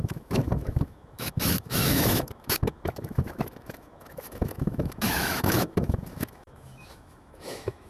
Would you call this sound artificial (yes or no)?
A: yes